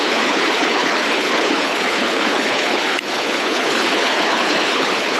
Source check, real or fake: fake